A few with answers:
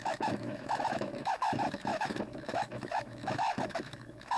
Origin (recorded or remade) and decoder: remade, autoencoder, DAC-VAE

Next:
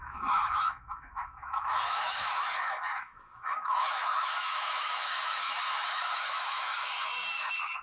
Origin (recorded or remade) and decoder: remade, autoencoder, DAC-VAE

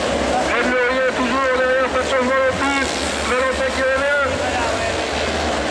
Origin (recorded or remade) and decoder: recorded